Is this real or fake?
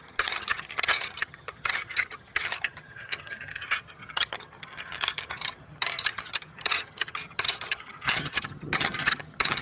fake